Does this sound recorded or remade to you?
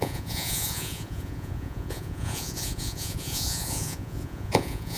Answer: remade